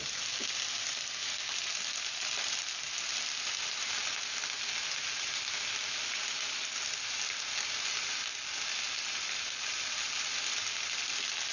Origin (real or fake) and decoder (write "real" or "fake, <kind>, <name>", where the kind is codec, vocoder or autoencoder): real